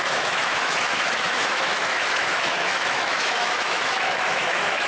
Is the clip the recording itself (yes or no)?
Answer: no